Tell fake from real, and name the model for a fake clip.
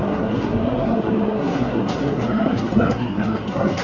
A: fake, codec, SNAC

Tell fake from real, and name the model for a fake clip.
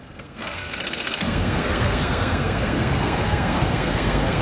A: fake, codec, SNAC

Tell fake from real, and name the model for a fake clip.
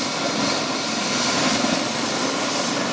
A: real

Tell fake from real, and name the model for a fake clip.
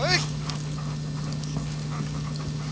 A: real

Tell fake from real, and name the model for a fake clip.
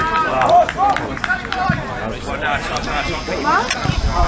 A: real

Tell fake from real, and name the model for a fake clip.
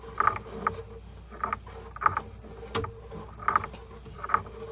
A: real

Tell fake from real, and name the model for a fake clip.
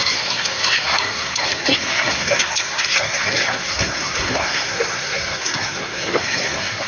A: fake, codec, SNAC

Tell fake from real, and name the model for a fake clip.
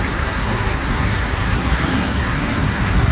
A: fake, codec, SNAC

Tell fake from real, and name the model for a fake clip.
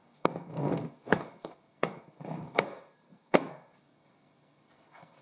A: fake, codec, SNAC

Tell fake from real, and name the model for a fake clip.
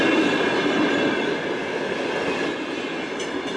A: real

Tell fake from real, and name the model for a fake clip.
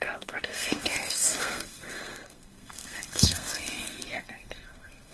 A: fake, codec, SNAC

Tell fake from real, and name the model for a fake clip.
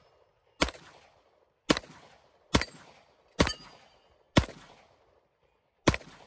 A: real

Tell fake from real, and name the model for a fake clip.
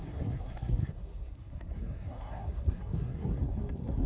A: fake, codec, SNAC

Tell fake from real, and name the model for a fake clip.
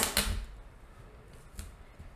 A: real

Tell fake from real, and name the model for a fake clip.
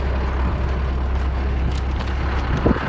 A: real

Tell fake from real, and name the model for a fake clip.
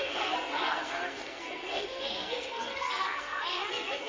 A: fake, codec, SNAC